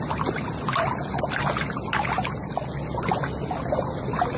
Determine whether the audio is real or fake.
real